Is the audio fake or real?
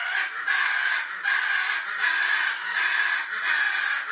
real